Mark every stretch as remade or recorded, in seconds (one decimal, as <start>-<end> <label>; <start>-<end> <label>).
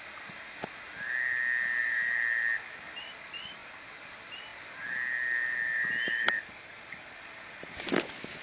0.0-4.5 recorded; 4.5-7.7 remade; 7.7-8.4 recorded